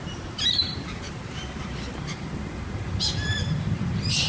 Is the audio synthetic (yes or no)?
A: no